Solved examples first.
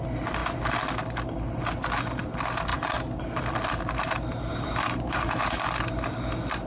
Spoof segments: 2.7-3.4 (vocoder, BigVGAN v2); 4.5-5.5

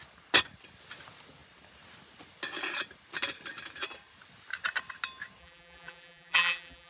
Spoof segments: 5.4-6.9 (vocoder, BigVGAN v2)